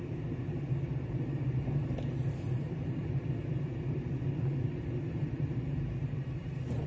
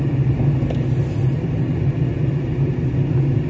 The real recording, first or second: second